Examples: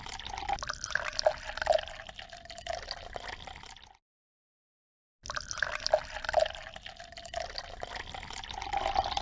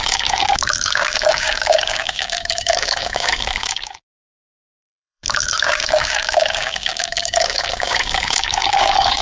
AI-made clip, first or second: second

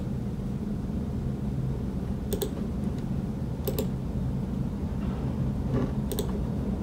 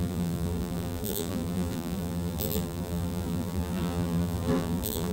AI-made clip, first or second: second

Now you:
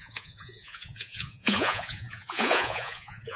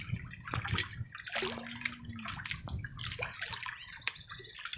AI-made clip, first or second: first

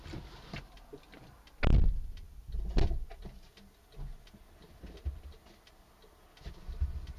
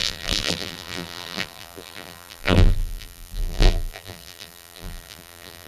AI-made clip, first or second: second